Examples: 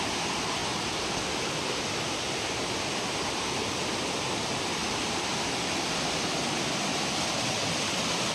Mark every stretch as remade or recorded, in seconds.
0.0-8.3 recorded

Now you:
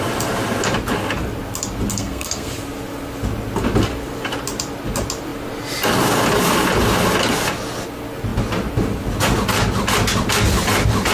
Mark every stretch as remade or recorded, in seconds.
0.0-1.9 recorded; 1.9-2.5 remade; 2.5-11.1 recorded

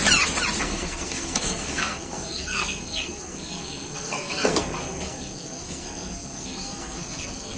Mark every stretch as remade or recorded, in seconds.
0.0-0.6 recorded; 0.6-7.6 remade